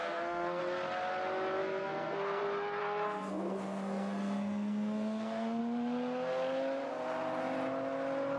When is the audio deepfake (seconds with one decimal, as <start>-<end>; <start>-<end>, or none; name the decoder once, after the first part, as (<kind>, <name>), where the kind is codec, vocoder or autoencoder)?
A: 0.0-0.6 (codec, SNAC); 1.6-2.4; 2.8-5.6